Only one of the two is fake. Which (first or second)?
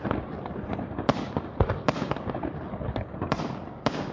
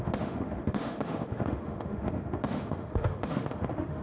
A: second